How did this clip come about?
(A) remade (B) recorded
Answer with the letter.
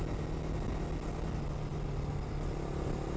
B